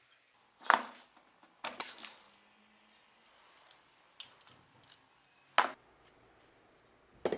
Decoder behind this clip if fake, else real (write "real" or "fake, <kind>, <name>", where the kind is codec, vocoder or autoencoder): real